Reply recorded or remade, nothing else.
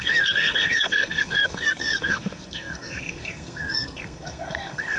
remade